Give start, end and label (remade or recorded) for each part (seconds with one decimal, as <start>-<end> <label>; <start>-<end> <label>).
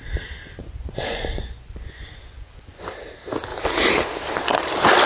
0.0-0.4 recorded; 0.4-2.8 remade; 2.8-5.1 recorded